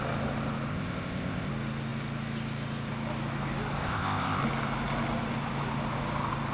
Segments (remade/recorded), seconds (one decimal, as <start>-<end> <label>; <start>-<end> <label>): 0.0-0.7 recorded; 0.7-1.5 remade; 1.5-3.8 recorded; 3.8-4.4 remade; 4.4-6.5 recorded